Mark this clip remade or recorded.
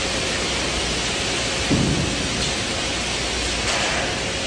recorded